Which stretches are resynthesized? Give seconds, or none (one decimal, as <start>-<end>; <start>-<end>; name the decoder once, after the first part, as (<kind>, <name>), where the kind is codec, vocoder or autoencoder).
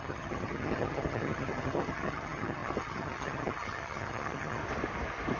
0.0-4.6 (vocoder, HiFi-GAN)